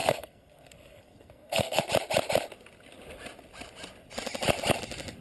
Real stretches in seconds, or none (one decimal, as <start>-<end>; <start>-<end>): 1.8-5.2